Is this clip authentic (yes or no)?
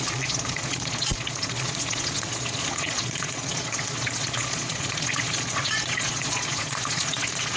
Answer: no